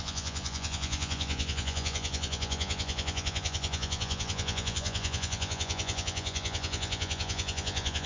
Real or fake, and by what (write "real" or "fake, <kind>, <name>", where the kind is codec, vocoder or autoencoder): fake, vocoder, Vocos